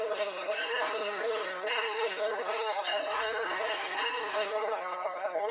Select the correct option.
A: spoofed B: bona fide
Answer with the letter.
A